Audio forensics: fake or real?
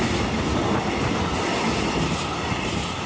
real